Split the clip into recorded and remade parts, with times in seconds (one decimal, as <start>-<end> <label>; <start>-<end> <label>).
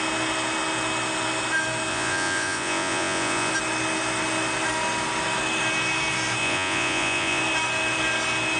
0.0-1.9 recorded; 1.9-3.5 remade; 3.5-6.4 recorded; 6.4-7.4 remade; 7.4-8.6 recorded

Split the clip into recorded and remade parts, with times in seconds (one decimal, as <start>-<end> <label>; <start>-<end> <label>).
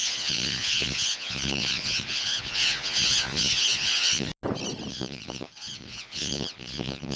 0.0-4.3 remade; 4.3-4.9 recorded; 4.9-7.2 remade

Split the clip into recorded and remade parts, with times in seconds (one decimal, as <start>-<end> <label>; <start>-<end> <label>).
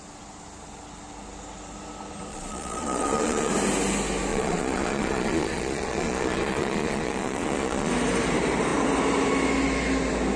0.0-2.3 recorded; 2.3-3.5 remade; 3.5-4.3 recorded; 4.3-7.9 remade; 7.9-10.4 recorded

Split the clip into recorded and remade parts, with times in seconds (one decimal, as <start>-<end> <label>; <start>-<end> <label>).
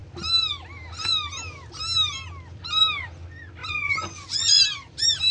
0.0-3.6 recorded; 3.6-4.6 remade; 4.6-5.3 recorded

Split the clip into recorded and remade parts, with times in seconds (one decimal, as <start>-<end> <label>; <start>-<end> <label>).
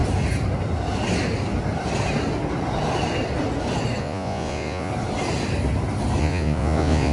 0.0-4.0 recorded; 4.0-4.9 remade; 4.9-6.2 recorded; 6.2-7.1 remade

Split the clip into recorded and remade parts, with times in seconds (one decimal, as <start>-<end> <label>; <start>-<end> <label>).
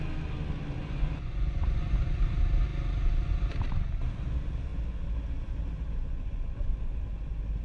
0.0-0.8 recorded; 0.8-2.3 remade; 2.3-6.0 recorded; 6.0-6.7 remade; 6.7-7.6 recorded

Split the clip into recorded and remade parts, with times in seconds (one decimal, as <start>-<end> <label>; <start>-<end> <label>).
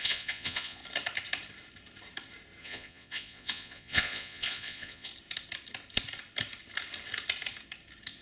0.0-0.8 remade; 0.8-2.6 recorded; 2.6-5.1 remade; 5.1-8.2 recorded